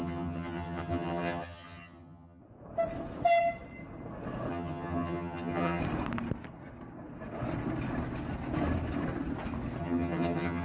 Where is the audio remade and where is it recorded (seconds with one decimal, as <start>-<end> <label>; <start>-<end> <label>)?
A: 0.0-2.4 remade; 2.4-4.5 recorded; 4.5-5.8 remade; 5.8-9.8 recorded; 9.8-10.6 remade